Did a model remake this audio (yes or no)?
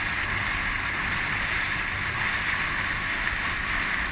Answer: no